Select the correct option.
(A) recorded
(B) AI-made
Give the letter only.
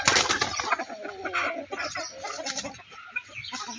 A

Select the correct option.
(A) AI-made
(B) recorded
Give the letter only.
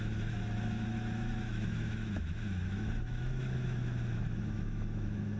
A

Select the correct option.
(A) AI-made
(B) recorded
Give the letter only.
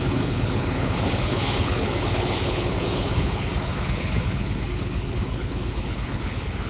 A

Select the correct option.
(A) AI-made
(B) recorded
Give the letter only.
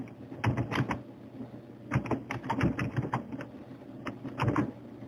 B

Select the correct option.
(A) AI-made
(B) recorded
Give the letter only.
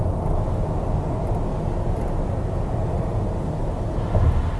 B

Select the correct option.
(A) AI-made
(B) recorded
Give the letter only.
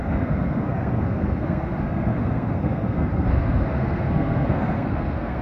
A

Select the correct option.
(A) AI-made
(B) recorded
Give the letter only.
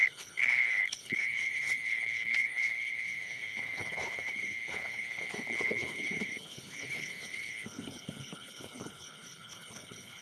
A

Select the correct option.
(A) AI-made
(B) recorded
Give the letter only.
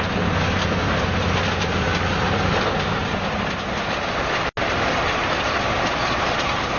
B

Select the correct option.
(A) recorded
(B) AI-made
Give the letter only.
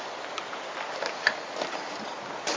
A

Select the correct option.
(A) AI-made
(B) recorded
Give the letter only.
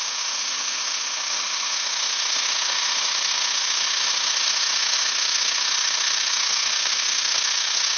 A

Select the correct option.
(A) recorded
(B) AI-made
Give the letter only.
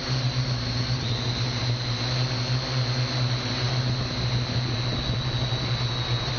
A